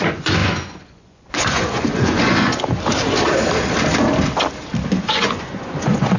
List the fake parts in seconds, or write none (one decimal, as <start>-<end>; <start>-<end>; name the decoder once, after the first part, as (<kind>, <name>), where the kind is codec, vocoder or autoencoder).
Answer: 0.0-2.5 (vocoder, Vocos); 5.0-6.2